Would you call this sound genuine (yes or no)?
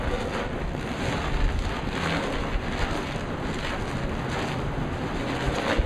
yes